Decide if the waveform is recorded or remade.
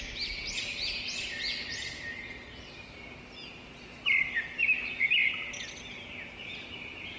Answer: recorded